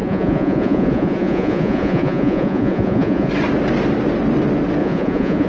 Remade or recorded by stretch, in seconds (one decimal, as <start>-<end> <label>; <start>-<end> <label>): 0.0-3.3 remade; 3.3-4.8 recorded; 4.8-5.5 remade